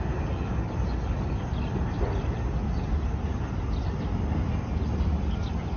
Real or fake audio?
real